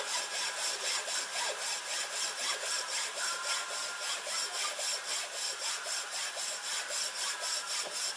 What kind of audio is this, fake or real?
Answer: fake